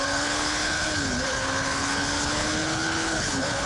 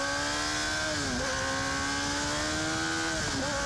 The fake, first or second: first